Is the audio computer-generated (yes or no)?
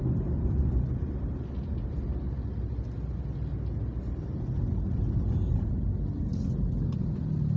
no